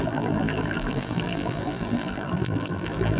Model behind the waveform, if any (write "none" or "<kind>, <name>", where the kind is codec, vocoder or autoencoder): vocoder, BigVGAN v2